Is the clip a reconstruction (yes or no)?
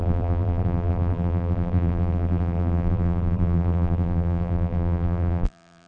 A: yes